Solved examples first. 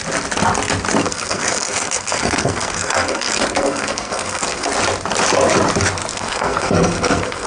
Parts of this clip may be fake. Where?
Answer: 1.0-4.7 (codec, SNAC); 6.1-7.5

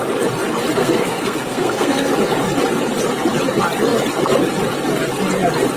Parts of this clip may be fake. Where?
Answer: 0.8-2.1 (codec, SNAC)

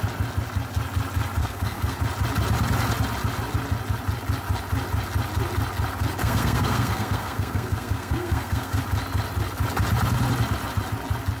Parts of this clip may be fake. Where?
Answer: 1.4-2.0 (codec, SNAC); 6.2-8.8

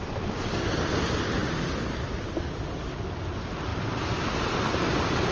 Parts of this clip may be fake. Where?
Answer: none

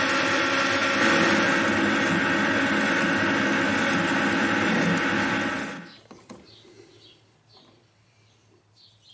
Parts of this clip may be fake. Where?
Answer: none

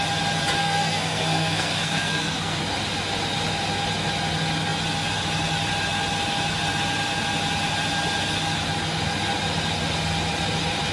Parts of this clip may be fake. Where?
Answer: 0.6-2.6 (codec, SNAC)

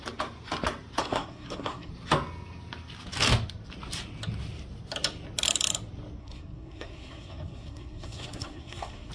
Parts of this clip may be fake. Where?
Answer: 1.0-1.9 (codec, SNAC); 6.2-9.1

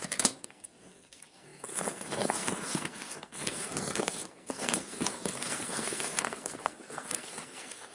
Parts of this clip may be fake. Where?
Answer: 0.0-7.9 (codec, SNAC)